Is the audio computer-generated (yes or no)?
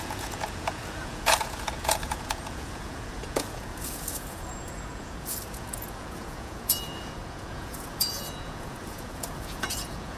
yes